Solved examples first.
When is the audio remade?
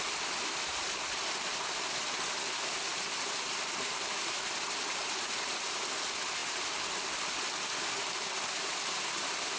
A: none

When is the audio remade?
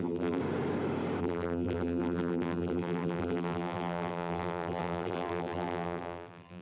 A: 0.0-0.4 (vocoder, BigVGAN v2); 1.2-6.6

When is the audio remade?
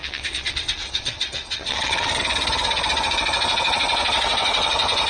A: 0.0-2.2 (vocoder, WaveNeXt)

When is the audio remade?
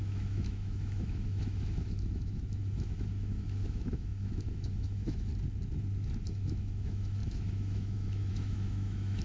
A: 0.0-5.3 (autoencoder, DAC-VAE); 6.3-9.2